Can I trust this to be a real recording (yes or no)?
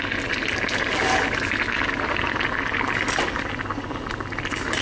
yes